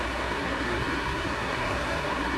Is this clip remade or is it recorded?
remade